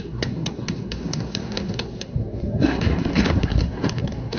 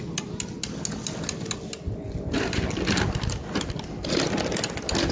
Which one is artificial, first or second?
first